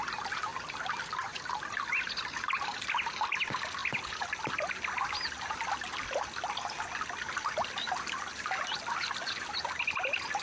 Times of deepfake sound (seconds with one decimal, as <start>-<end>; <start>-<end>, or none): none